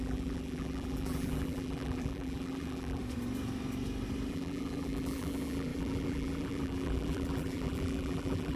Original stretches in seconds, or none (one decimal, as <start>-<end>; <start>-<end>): 3.0-4.3